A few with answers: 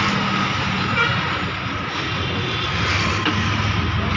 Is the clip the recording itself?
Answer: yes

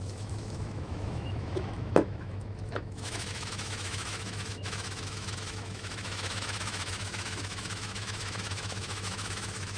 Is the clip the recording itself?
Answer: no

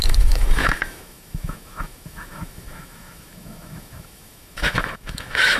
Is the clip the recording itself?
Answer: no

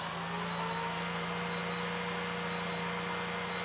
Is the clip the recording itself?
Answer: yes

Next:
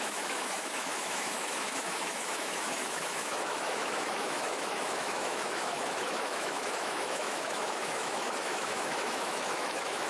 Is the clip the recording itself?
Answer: no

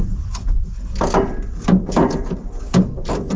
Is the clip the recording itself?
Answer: yes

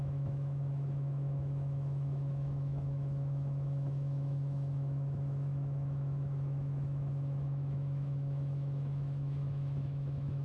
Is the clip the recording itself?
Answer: no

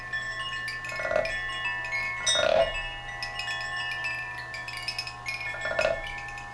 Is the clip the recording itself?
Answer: yes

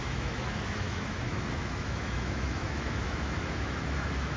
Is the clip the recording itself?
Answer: no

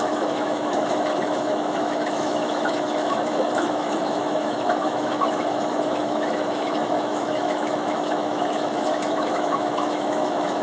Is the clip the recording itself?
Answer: no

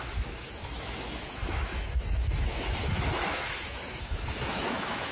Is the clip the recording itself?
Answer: no